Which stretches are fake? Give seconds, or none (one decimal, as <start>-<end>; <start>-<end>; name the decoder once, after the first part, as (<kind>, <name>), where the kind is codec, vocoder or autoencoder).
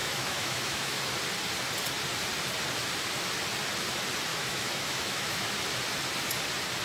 0.0-1.0 (autoencoder, DAC-VAE); 4.3-5.5